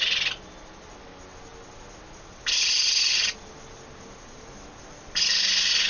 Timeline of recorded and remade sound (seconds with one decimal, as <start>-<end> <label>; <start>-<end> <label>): 0.0-5.9 recorded